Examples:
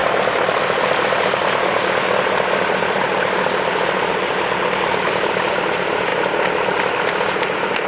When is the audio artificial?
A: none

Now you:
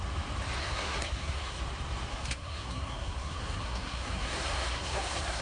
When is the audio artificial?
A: 0.6-1.6 (codec, SNAC); 2.1-5.4